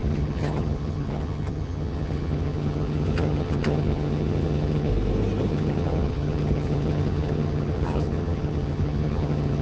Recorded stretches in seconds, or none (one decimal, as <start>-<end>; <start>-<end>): 4.9-5.5